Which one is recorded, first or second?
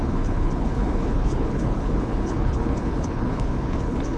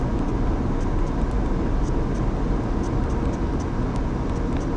second